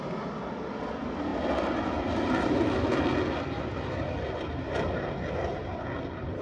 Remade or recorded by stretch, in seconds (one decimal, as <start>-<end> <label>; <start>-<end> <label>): 0.0-6.4 recorded